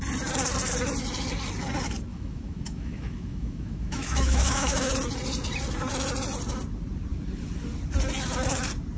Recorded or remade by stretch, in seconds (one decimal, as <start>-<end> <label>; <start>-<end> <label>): 0.0-2.1 recorded; 2.1-4.9 remade; 4.9-9.0 recorded